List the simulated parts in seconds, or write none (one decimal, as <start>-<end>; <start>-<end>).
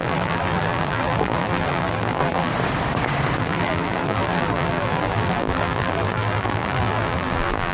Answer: 0.0-2.5; 3.4-7.7